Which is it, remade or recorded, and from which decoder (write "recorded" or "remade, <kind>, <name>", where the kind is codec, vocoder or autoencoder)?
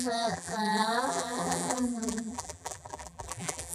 remade, vocoder, BigVGAN v2